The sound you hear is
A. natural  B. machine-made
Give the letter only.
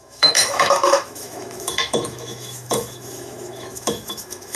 B